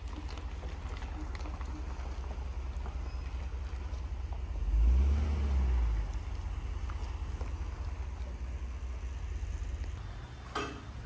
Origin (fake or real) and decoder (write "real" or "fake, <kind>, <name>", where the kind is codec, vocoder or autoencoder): real